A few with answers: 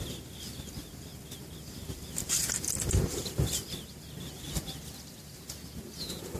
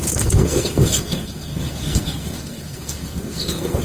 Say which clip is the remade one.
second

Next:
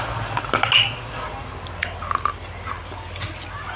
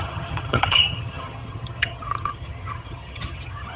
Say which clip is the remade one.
second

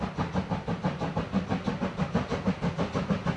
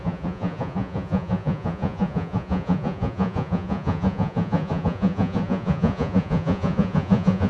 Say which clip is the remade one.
second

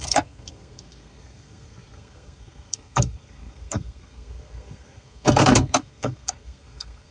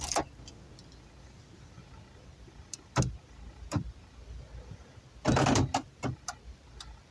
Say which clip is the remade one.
first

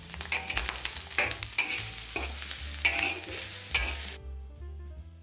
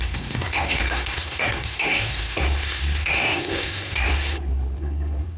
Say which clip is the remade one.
second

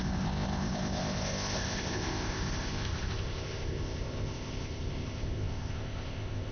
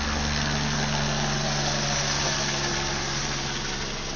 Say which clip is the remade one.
first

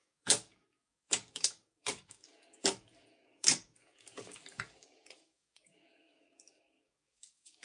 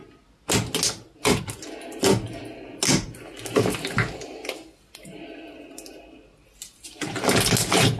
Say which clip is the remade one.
first